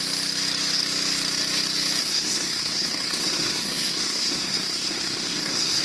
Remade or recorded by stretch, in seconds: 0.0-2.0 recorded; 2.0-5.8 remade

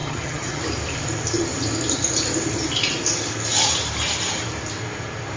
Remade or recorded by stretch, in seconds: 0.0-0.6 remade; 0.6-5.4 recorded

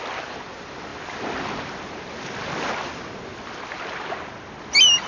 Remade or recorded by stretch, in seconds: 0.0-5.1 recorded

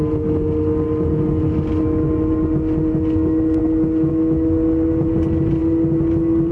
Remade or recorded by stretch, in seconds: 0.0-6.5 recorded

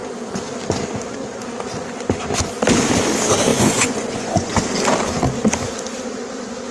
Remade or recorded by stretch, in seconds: 0.0-3.5 recorded; 3.5-4.6 remade; 4.6-6.7 recorded

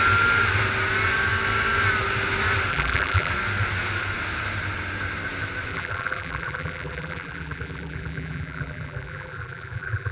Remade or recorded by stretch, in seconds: 0.0-2.7 recorded; 2.7-3.3 remade; 3.3-5.7 recorded; 5.7-10.1 remade

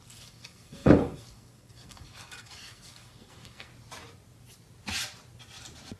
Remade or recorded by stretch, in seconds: 0.0-3.7 remade; 3.7-6.0 recorded